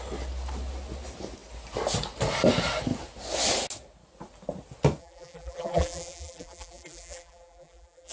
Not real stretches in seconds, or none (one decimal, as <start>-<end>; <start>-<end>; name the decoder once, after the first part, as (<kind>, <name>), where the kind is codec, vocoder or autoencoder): 5.0-8.1 (vocoder, BigVGAN v2)